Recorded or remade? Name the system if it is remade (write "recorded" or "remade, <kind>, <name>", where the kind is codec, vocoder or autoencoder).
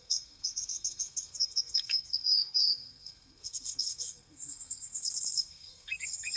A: remade, codec, SNAC